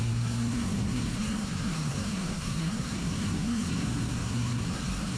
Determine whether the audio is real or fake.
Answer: fake